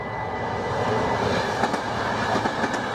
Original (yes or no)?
yes